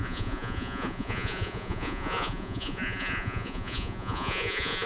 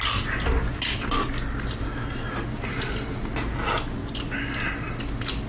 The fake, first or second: first